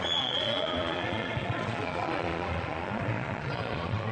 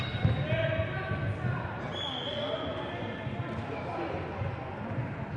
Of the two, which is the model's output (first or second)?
first